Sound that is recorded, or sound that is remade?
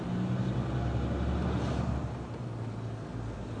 recorded